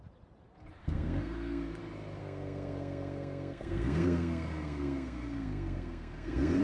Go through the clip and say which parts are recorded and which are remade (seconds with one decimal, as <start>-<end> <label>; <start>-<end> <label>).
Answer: 0.0-0.8 recorded; 0.8-1.8 remade; 1.8-2.2 recorded; 2.2-6.6 remade